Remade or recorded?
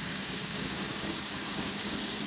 remade